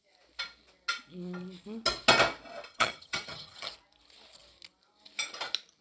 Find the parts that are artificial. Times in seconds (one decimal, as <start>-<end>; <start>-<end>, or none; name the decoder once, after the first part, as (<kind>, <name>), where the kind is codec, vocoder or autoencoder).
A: 2.7-3.7 (vocoder, HiFi-GAN)